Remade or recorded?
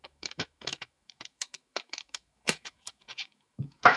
remade